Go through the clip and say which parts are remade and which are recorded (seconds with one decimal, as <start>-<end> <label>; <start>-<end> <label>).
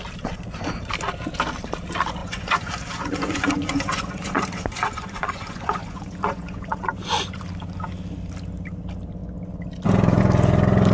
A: 0.0-2.2 recorded; 2.2-7.4 remade; 7.4-10.9 recorded